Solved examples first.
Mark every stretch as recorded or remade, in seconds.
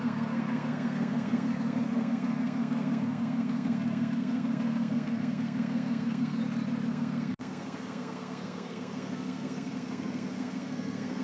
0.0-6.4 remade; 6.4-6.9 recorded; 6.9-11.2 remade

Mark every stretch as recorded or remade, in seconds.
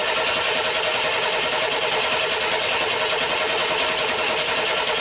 0.0-5.0 recorded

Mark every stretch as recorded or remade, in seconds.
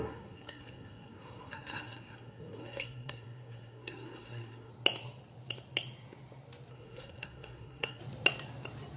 0.0-4.7 remade; 4.7-6.7 recorded; 6.7-8.0 remade; 8.0-9.0 recorded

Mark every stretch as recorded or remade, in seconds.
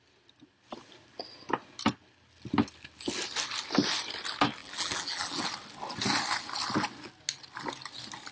0.0-4.6 recorded; 4.6-5.4 remade; 5.4-8.3 recorded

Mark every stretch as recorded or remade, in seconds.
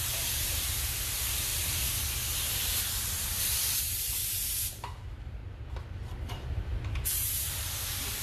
0.0-1.5 remade; 1.5-2.6 recorded; 2.6-5.4 remade; 5.4-6.3 recorded; 6.3-8.2 remade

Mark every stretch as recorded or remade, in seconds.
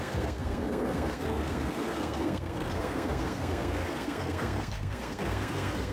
0.0-5.9 remade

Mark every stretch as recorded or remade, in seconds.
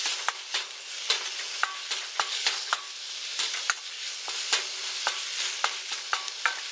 0.0-2.3 recorded; 2.3-2.8 remade; 2.8-6.7 recorded